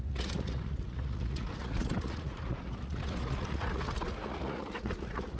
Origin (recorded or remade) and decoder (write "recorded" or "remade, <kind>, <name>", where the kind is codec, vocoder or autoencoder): remade, vocoder, Vocos